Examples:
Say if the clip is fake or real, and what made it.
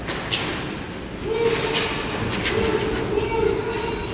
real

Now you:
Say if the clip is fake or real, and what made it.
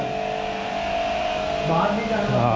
real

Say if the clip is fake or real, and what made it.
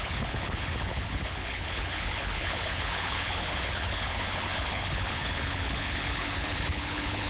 fake, codec, HILCodec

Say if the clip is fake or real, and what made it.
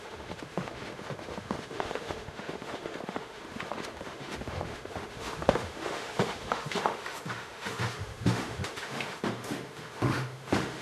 fake, autoencoder, DAC-VAE